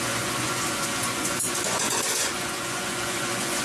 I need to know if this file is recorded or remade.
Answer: remade